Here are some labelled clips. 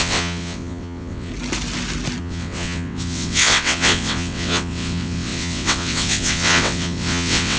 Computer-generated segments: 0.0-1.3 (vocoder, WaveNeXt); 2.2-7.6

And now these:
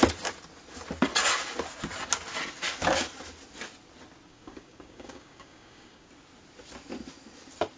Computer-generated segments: 4.3-6.1 (codec, DAC)

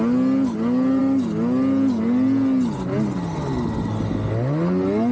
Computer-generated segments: none

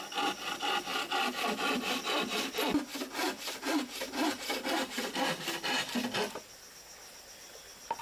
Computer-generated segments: none